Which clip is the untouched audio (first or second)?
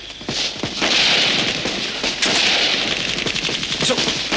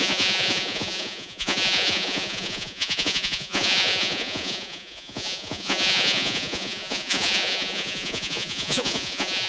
first